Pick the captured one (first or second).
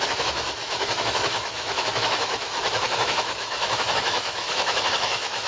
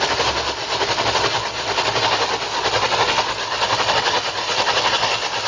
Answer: second